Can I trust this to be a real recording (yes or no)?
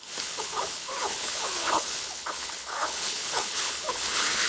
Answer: no